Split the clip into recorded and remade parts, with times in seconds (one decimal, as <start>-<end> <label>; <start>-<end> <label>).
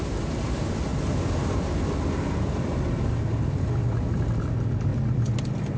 0.0-5.8 recorded